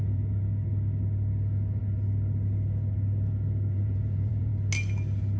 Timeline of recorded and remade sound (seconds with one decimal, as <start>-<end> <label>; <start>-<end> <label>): 0.0-0.5 remade; 0.5-3.7 recorded; 3.7-4.5 remade; 4.5-5.4 recorded